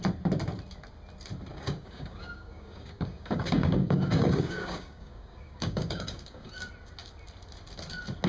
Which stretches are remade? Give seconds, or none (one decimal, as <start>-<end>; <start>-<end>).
1.5-6.5